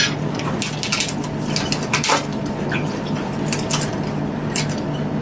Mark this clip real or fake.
real